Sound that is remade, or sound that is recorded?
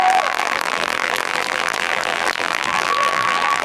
remade